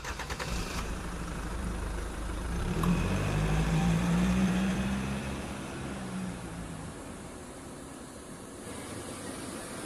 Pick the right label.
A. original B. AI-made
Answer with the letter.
B